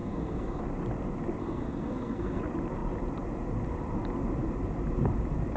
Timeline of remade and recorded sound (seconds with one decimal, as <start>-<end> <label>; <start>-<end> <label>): 0.0-0.6 remade; 0.6-1.4 recorded; 1.4-2.4 remade; 2.4-5.6 recorded